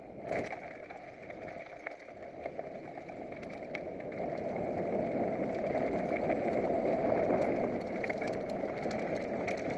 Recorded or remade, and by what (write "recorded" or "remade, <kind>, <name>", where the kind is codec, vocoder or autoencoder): recorded